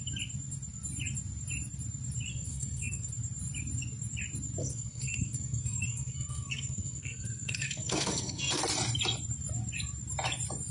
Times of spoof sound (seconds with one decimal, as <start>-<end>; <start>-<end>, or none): 2.3-3.1; 4.6-8.6